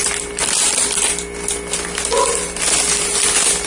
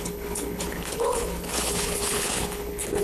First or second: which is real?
first